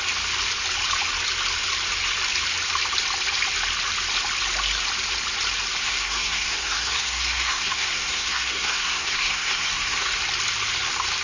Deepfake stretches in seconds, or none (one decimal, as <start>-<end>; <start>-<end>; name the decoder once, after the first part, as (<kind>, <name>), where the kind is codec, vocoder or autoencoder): 5.8-10.1 (codec, SNAC)